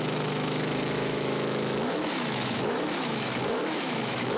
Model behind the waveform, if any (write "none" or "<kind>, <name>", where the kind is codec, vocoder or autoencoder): autoencoder, DAC-VAE